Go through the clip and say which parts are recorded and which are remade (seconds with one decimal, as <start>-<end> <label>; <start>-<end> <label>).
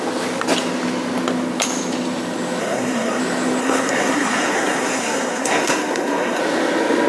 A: 0.0-2.6 recorded; 2.6-3.2 remade; 3.2-3.6 recorded; 3.6-6.4 remade; 6.4-7.1 recorded